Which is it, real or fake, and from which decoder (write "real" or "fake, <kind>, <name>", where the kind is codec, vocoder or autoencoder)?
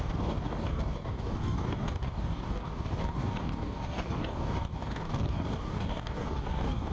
fake, codec, DAC